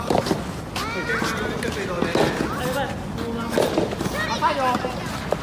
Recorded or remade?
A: recorded